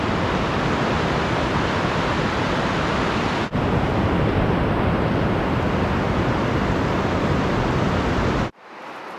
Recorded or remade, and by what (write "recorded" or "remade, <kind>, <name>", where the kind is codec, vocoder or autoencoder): recorded